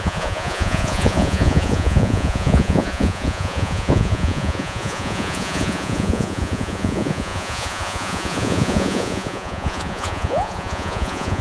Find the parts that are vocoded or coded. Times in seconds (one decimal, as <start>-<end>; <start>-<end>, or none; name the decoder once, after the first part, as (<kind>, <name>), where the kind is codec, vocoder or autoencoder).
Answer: 0.0-11.4 (vocoder, Vocos)